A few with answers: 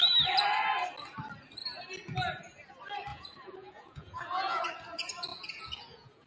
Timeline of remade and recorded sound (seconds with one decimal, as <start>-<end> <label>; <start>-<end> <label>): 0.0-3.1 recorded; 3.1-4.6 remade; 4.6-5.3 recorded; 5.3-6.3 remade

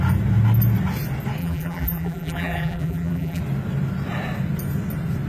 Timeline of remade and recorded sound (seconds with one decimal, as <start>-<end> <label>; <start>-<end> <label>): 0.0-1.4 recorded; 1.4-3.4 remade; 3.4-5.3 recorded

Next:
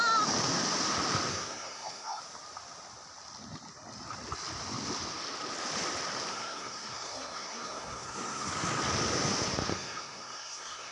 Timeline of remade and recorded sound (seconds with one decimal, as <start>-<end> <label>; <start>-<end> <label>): 0.0-1.3 recorded; 1.3-2.2 remade; 2.2-6.3 recorded; 6.3-8.5 remade; 8.5-9.7 recorded; 9.7-10.9 remade

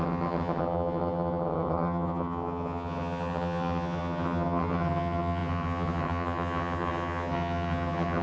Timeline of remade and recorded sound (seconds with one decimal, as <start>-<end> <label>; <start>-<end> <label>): 0.0-8.2 remade